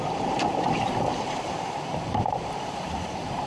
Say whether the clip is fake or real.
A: fake